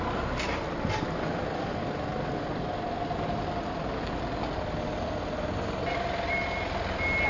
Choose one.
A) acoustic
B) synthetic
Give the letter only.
A